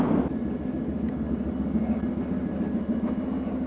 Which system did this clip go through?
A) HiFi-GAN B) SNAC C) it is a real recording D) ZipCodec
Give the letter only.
C